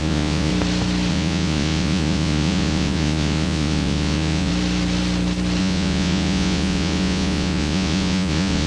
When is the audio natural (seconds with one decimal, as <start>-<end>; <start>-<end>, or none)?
0.5-1.1; 4.5-5.6